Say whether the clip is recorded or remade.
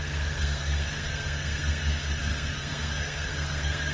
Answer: remade